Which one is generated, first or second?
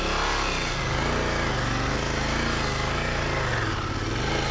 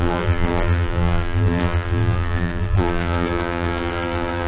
second